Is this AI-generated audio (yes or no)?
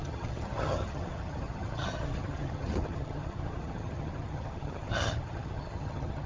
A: yes